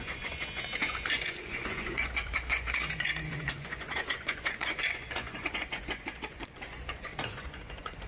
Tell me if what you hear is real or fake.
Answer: fake